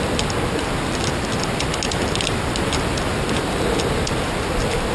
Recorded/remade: recorded